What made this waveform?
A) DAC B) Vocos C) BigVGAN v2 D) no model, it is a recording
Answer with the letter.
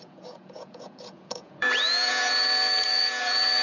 B